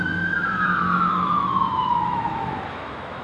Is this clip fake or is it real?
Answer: fake